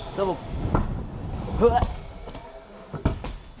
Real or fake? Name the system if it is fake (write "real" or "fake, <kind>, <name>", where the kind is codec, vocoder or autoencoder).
real